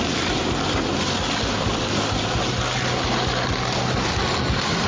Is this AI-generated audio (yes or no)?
no